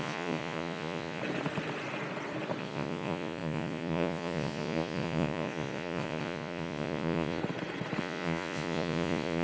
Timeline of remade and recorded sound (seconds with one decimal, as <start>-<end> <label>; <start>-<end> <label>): 0.0-1.2 remade; 1.2-2.6 recorded; 2.6-7.4 remade; 7.4-8.0 recorded; 8.0-9.4 remade